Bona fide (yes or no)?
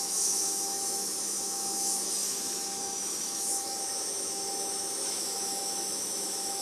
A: no